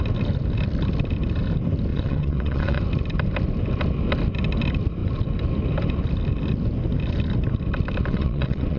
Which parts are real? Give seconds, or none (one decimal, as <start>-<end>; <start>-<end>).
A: 0.0-1.9; 2.8-8.1